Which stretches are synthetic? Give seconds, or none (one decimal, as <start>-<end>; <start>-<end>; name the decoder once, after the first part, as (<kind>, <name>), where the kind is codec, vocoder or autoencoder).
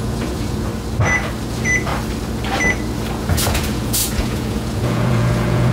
0.0-0.7 (vocoder, Vocos); 1.5-1.9; 3.2-5.7